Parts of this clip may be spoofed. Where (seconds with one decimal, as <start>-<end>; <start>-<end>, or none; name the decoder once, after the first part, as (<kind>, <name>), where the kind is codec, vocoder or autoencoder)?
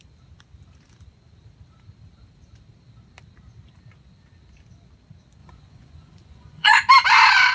5.4-6.9 (vocoder, Vocos)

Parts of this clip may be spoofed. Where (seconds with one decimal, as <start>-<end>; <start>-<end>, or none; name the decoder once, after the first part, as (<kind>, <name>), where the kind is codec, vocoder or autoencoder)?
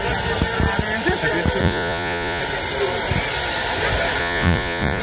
1.6-2.4 (vocoder, Vocos); 4.2-5.0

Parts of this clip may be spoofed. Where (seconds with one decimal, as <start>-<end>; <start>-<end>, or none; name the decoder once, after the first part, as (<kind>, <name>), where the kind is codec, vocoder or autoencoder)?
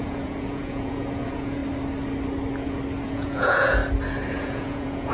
0.0-1.6 (vocoder, Vocos); 3.0-3.8; 4.3-5.1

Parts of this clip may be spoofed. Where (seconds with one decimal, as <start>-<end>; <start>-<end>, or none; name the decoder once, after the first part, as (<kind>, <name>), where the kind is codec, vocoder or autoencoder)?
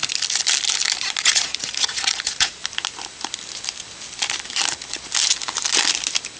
1.2-2.6 (vocoder, Vocos)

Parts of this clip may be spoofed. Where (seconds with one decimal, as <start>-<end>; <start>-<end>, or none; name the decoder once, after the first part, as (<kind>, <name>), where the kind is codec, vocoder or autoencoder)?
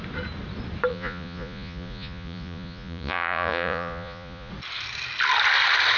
0.9-4.5 (vocoder, Vocos)